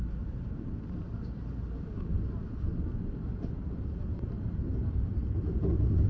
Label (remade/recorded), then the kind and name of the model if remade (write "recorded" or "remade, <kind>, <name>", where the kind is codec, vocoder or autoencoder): recorded